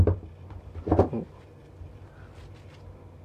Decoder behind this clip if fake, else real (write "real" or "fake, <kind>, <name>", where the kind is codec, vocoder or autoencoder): real